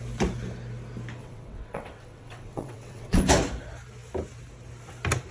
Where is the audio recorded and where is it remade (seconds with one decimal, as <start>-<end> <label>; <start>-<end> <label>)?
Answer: 0.0-1.2 recorded; 1.2-3.2 remade; 3.2-5.3 recorded